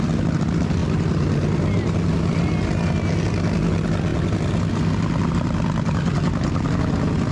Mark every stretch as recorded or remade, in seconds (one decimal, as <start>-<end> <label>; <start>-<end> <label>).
0.0-7.3 recorded